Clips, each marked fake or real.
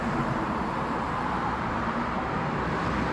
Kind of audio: fake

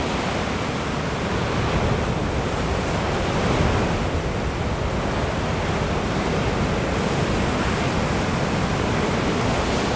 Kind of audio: real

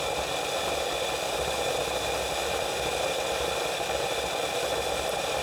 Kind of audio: real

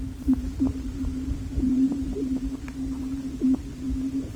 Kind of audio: fake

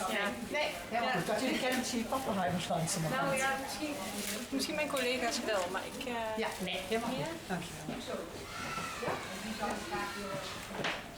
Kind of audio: real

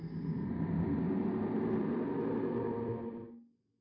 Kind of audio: real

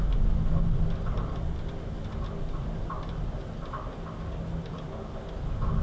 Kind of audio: real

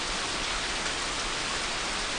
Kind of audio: fake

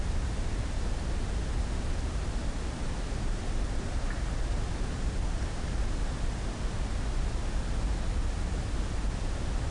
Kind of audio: real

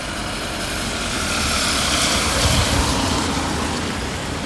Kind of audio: fake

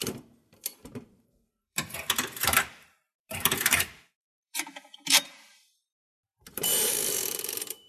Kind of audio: fake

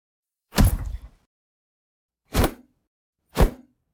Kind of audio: fake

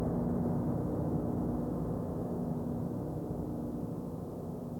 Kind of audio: real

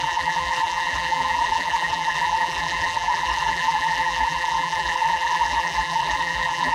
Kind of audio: fake